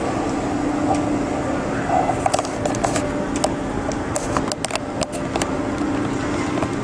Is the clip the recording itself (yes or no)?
yes